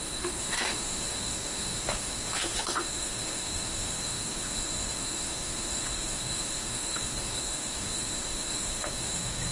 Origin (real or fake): fake